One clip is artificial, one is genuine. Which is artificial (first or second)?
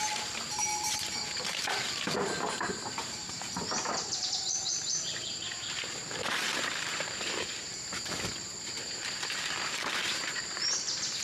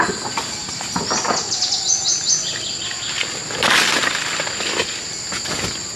first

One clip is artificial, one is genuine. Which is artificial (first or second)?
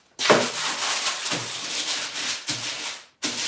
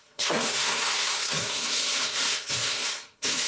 second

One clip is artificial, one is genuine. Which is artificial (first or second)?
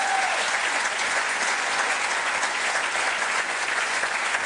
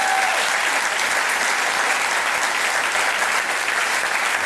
first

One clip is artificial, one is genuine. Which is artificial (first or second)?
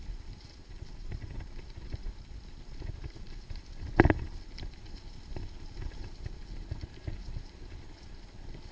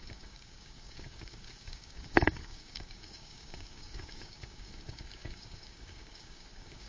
second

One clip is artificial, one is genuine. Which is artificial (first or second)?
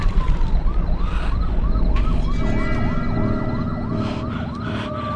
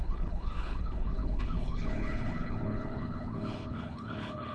second